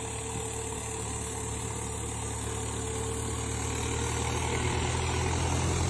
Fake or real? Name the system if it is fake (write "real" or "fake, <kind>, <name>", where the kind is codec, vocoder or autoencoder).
real